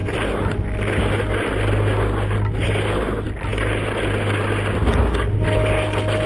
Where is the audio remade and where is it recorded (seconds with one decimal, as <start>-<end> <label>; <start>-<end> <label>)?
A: 0.0-6.3 recorded

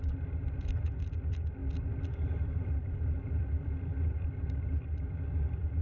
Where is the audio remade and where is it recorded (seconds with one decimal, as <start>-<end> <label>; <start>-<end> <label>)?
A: 0.0-5.8 remade

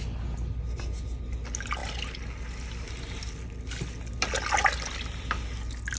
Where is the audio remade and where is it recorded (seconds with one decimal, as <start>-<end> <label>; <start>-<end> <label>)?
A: 0.0-6.0 recorded

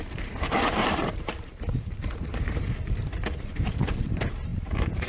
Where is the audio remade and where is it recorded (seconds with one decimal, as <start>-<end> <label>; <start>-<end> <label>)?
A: 0.0-5.1 remade

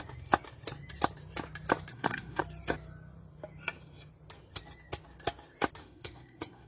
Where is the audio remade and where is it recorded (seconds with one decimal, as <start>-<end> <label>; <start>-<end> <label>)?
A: 0.0-1.9 recorded; 1.9-2.4 remade; 2.4-5.8 recorded; 5.8-6.7 remade